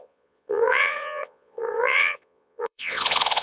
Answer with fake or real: fake